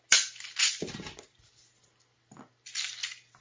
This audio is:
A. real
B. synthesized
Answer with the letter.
A